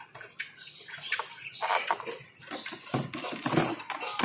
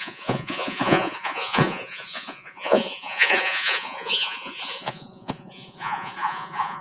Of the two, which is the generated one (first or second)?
second